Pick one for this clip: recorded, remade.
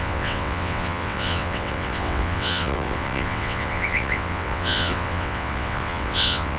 remade